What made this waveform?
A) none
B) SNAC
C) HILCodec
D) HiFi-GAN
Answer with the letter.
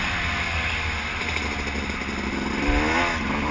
A